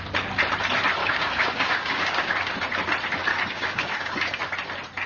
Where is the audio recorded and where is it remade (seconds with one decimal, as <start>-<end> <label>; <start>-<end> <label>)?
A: 0.0-1.0 recorded; 1.0-2.3 remade; 2.3-3.3 recorded; 3.3-4.4 remade; 4.4-5.1 recorded